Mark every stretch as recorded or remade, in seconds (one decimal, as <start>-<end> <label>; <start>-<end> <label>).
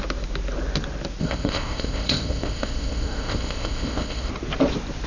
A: 0.0-1.2 recorded; 1.2-4.3 remade; 4.3-5.1 recorded